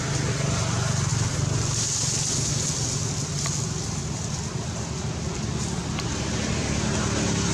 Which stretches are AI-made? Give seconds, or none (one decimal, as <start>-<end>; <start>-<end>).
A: none